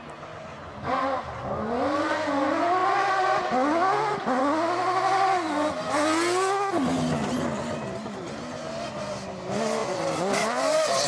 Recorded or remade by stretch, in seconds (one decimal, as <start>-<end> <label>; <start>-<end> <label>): 0.0-2.8 recorded; 2.8-4.4 remade; 4.4-9.8 recorded; 9.8-11.1 remade